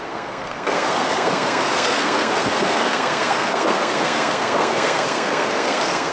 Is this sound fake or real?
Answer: fake